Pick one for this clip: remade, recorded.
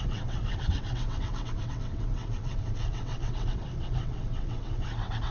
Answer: remade